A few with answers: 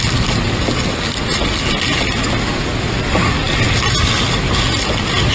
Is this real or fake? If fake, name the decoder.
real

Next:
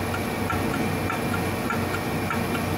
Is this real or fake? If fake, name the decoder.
real